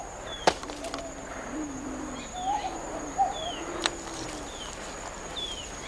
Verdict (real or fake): fake